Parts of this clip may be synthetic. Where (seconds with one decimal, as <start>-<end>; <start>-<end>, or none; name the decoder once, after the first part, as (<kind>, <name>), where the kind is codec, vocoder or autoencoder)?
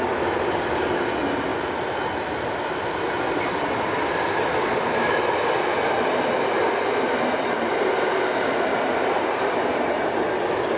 none